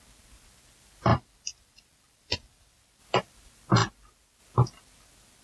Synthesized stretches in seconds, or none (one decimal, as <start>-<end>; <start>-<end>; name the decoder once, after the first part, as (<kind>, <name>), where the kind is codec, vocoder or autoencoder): 1.1-3.0 (vocoder, BigVGAN v2)